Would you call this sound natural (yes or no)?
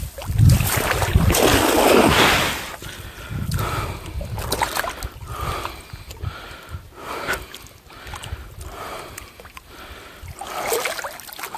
yes